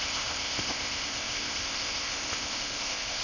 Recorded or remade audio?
remade